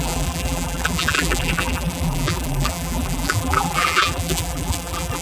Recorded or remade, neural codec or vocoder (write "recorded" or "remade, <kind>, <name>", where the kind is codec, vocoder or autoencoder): remade, vocoder, BigVGAN v2